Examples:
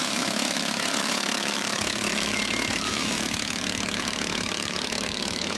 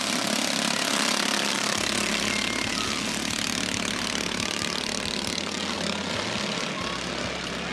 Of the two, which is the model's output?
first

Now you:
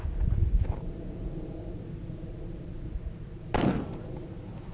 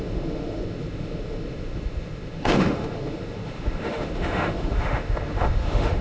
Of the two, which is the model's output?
second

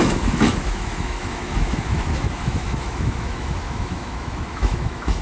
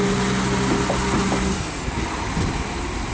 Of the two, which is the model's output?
first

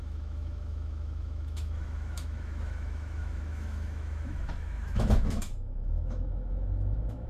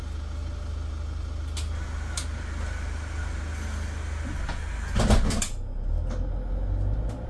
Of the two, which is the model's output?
first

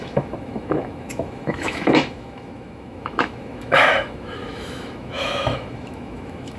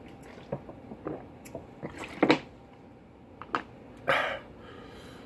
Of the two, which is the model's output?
first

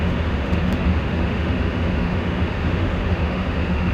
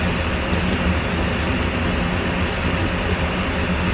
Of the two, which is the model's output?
first